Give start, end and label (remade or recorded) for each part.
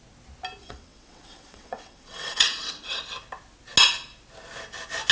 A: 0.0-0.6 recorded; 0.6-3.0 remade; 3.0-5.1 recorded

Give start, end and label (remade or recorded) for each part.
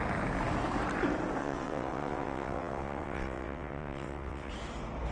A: 0.0-1.4 recorded; 1.4-4.5 remade; 4.5-5.1 recorded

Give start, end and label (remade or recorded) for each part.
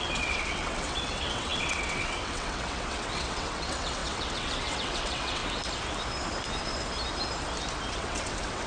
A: 0.0-5.4 remade; 5.4-7.9 recorded; 7.9-8.7 remade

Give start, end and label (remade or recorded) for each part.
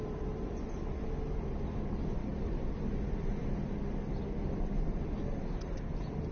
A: 0.0-6.3 recorded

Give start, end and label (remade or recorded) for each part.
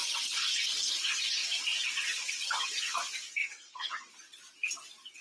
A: 0.0-1.4 recorded; 1.4-2.8 remade; 2.8-3.4 recorded; 3.4-4.1 remade; 4.1-5.2 recorded